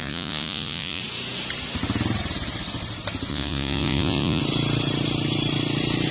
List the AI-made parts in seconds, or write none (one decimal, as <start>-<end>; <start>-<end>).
0.0-1.0; 3.3-4.4

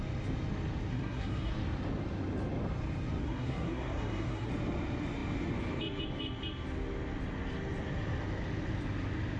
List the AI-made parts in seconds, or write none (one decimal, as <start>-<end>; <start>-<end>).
0.9-1.5; 3.2-4.5

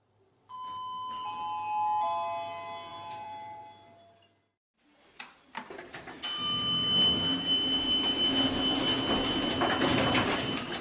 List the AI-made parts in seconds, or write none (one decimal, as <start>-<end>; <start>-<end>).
2.9-3.6; 9.9-10.8

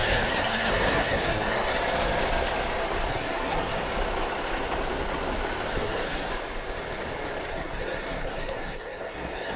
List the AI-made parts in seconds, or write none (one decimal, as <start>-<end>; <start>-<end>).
0.0-1.7; 3.1-3.8; 5.7-6.3; 7.5-9.6

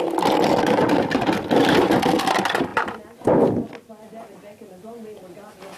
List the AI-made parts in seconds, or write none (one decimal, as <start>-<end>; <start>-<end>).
none

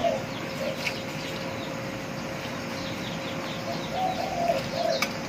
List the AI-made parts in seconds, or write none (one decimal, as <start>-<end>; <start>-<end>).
none